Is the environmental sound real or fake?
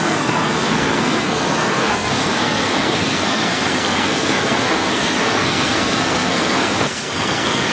fake